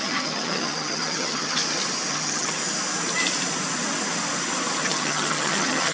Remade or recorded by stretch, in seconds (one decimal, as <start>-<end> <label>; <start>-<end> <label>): 0.0-1.6 remade; 1.6-2.1 recorded; 2.1-2.6 remade; 2.6-4.9 recorded; 4.9-5.9 remade